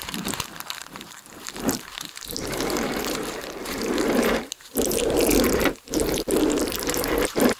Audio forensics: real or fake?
fake